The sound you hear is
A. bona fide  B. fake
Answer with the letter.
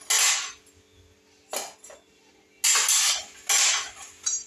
A